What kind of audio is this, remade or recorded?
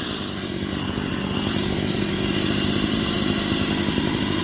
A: recorded